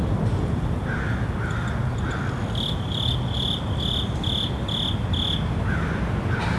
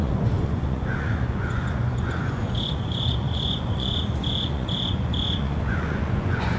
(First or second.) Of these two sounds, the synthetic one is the second